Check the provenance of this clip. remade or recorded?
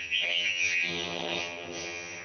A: remade